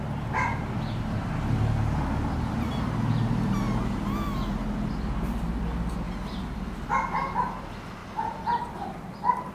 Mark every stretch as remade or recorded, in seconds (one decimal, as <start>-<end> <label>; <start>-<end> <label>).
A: 0.0-9.5 recorded